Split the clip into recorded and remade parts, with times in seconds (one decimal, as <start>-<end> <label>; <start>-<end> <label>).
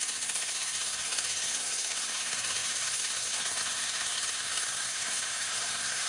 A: 0.0-6.1 remade